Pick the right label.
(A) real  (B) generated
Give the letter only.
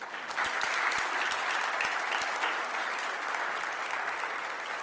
A